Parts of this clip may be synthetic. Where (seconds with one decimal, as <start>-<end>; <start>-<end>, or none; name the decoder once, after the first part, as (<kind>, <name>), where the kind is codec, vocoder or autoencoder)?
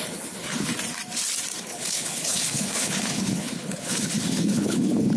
0.0-0.7 (codec, HILCodec); 1.6-5.2